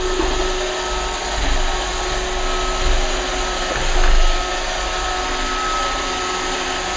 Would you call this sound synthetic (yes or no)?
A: no